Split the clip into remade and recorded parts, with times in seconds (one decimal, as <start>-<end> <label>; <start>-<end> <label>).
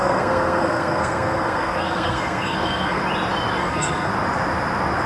0.0-3.0 remade; 3.0-3.6 recorded; 3.6-4.1 remade; 4.1-5.1 recorded